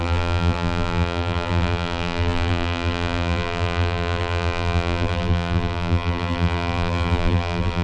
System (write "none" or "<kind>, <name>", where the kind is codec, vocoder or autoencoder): vocoder, BigVGAN v2